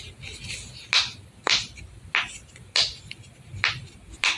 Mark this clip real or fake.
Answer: real